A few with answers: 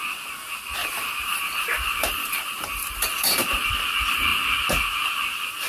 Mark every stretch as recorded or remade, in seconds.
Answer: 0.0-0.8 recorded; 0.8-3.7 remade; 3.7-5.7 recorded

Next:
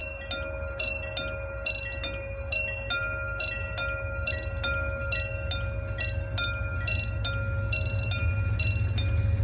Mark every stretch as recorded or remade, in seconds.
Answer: 0.0-9.4 recorded

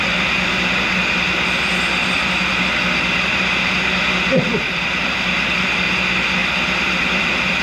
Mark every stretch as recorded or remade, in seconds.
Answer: 0.0-2.0 recorded; 2.0-5.8 remade; 5.8-6.4 recorded; 6.4-7.6 remade

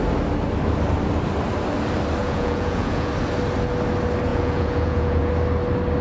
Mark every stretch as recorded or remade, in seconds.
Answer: 0.0-2.2 recorded; 2.2-3.1 remade; 3.1-4.3 recorded; 4.3-5.3 remade; 5.3-6.0 recorded

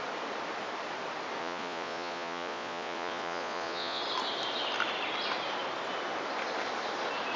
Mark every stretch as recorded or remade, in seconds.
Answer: 0.0-1.4 recorded; 1.4-4.0 remade; 4.0-7.4 recorded